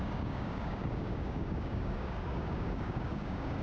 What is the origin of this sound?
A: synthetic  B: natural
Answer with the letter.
A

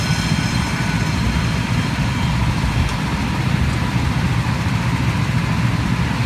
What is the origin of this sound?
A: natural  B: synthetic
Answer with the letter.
A